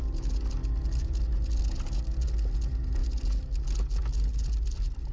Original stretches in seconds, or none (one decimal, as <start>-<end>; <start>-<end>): 0.0-5.1